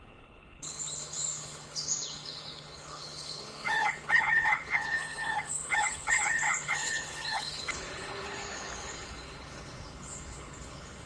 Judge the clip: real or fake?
fake